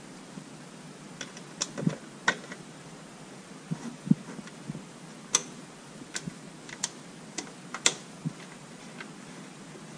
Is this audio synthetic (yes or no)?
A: no